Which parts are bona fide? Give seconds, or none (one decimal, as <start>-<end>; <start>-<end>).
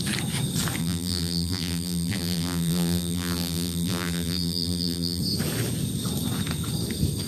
0.0-0.8; 5.2-7.3